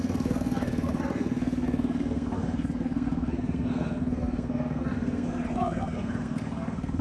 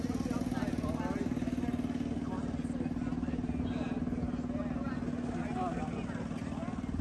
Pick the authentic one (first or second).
second